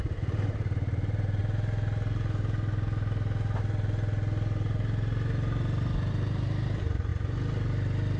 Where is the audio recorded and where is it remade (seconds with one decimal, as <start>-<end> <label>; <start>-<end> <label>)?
0.0-1.4 remade; 1.4-6.1 recorded; 6.1-7.1 remade; 7.1-8.2 recorded